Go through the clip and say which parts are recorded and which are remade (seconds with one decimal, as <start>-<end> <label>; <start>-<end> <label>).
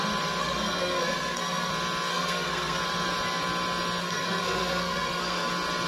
0.0-0.4 recorded; 0.4-1.7 remade; 1.7-2.1 recorded; 2.1-2.8 remade; 2.8-4.0 recorded; 4.0-5.5 remade; 5.5-5.9 recorded